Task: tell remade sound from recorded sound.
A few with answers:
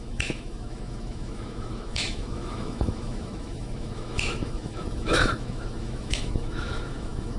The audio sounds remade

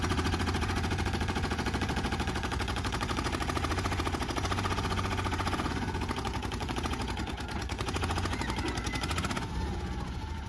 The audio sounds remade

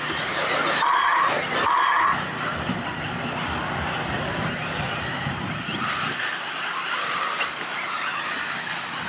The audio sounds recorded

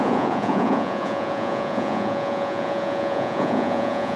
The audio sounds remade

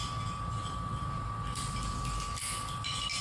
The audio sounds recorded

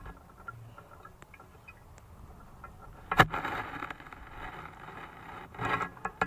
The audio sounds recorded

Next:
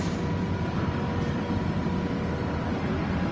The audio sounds recorded